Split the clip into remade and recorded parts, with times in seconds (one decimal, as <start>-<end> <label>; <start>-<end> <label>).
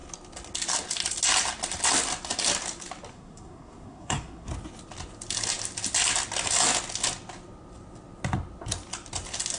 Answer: 0.0-3.1 recorded; 3.1-4.5 remade; 4.5-9.6 recorded